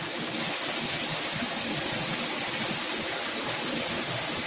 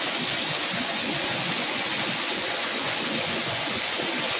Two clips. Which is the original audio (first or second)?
first